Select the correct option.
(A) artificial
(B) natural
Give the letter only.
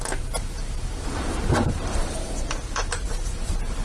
A